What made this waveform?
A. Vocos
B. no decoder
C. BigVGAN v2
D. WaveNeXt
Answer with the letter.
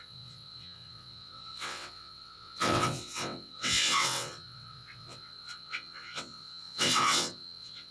D